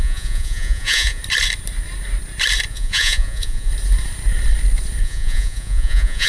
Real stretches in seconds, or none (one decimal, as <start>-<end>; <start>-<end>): 1.2-2.7; 3.7-5.0

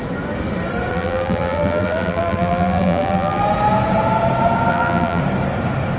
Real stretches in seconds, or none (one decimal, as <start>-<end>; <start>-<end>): 0.0-0.9; 3.4-4.7; 5.2-6.0

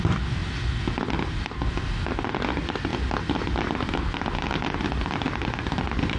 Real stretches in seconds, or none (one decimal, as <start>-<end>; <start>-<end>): 0.0-6.2

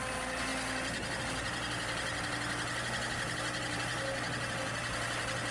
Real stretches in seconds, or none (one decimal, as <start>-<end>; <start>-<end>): 0.0-5.5

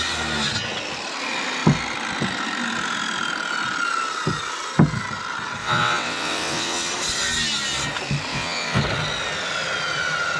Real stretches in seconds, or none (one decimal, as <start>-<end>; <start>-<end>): 0.0-5.6; 6.9-8.3; 8.8-10.4

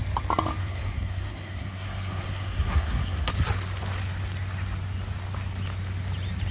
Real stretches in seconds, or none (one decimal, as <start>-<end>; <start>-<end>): 0.0-0.6; 3.3-6.5

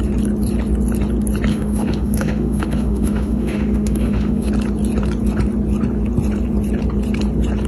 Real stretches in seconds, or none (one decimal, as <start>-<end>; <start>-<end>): 0.0-1.5; 4.5-7.7